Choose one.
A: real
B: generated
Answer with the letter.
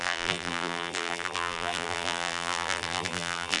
B